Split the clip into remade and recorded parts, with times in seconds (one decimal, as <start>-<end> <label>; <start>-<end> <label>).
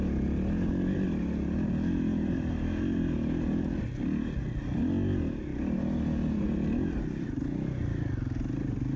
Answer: 0.0-9.0 recorded